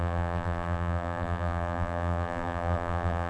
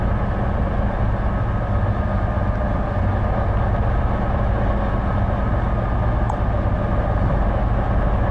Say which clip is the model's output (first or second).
first